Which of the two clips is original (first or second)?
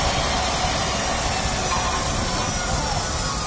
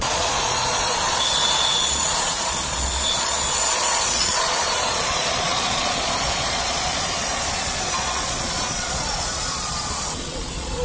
first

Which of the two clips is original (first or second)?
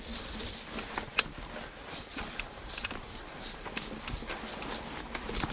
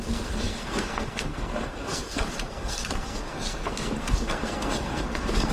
first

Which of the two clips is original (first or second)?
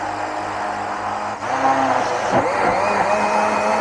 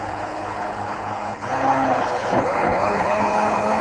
first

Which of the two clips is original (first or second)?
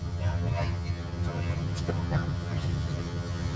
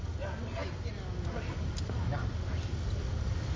second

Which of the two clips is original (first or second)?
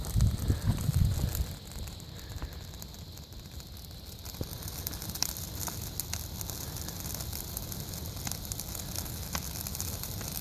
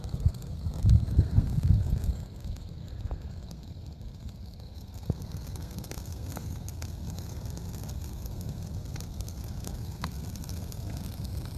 first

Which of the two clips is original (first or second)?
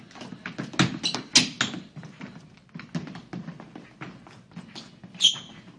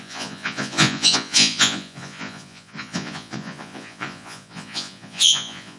first